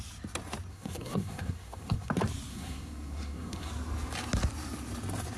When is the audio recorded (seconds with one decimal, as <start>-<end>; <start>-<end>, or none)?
0.0-0.7; 2.1-2.5; 3.7-5.4